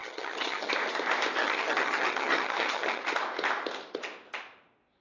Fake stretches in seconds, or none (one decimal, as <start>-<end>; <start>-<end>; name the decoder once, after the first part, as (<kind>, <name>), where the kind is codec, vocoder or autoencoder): 0.0-0.7 (vocoder, HiFi-GAN); 1.4-3.0